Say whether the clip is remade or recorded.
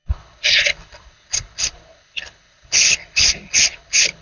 remade